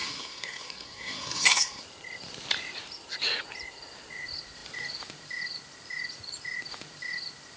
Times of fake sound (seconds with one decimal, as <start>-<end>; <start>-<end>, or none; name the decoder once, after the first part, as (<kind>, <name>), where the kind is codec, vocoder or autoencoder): 0.0-1.8 (codec, SNAC)